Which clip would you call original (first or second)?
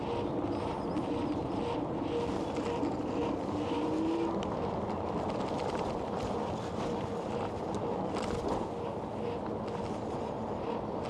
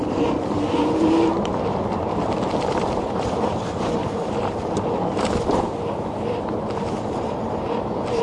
first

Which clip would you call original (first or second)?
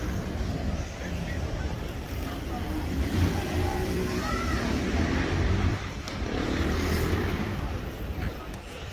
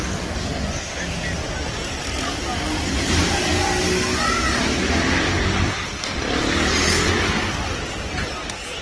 second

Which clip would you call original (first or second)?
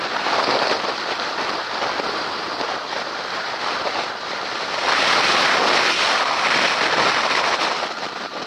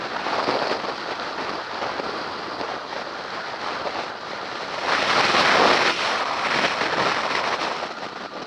second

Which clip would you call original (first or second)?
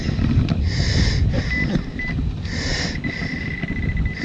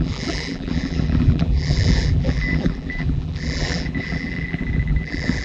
first